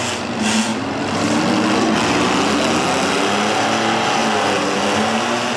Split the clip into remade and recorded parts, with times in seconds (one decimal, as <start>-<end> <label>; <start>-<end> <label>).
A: 0.0-5.6 recorded